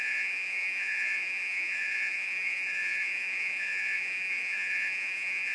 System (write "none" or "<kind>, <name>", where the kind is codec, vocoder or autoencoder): vocoder, Vocos